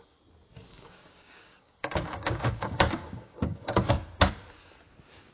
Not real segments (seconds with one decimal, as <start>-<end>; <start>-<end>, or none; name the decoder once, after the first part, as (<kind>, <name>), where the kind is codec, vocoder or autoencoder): 0.7-3.9 (codec, DAC)